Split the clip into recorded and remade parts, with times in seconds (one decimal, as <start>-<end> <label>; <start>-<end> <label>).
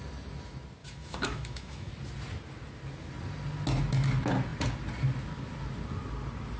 0.0-0.8 recorded; 0.8-1.9 remade; 1.9-6.6 recorded